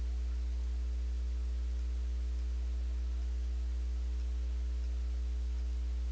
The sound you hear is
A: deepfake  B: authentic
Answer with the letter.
B